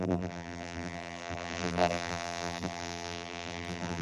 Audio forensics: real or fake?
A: fake